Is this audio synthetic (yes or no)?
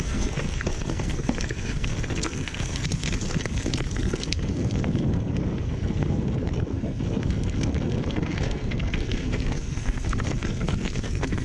yes